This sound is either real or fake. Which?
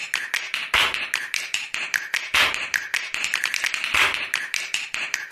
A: real